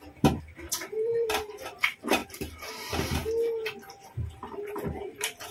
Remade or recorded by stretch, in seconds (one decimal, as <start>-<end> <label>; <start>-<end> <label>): 0.0-3.2 remade; 3.2-3.9 recorded; 3.9-5.5 remade

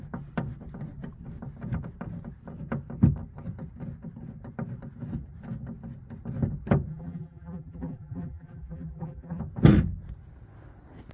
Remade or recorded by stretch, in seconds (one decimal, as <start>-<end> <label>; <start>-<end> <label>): 0.0-6.9 recorded; 6.9-9.4 remade; 9.4-11.1 recorded

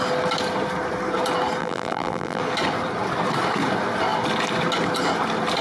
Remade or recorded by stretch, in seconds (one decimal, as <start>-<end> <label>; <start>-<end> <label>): 0.0-1.6 recorded; 1.6-2.4 remade; 2.4-5.6 recorded

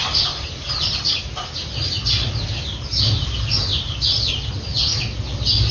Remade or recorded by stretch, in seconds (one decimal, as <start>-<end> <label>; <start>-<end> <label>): 0.0-1.2 remade; 1.2-3.7 recorded; 3.7-4.5 remade; 4.5-5.7 recorded

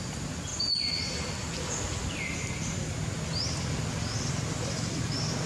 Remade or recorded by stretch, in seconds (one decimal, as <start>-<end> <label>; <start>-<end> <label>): 0.0-5.5 recorded